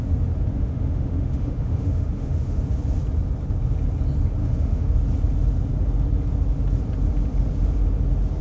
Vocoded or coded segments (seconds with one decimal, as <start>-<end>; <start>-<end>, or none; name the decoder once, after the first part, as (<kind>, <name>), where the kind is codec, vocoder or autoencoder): 0.5-2.6 (autoencoder, DAC-VAE); 4.4-4.9